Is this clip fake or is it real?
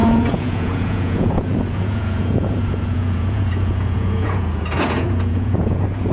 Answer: fake